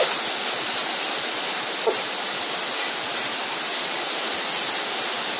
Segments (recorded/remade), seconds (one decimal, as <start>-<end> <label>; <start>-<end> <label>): 0.0-5.4 recorded